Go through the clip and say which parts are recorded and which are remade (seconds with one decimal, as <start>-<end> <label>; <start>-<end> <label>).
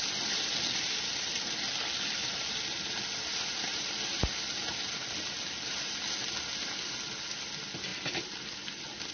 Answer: 0.0-9.1 recorded